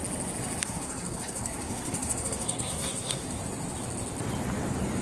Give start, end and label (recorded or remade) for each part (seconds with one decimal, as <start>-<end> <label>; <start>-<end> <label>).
0.0-0.6 recorded; 0.6-3.4 remade; 3.4-5.0 recorded